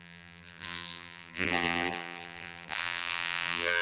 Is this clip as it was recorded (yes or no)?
no